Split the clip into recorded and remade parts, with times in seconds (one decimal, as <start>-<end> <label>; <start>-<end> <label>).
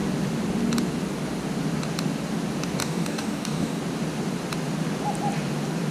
0.0-2.8 recorded; 2.8-3.8 remade; 3.8-5.9 recorded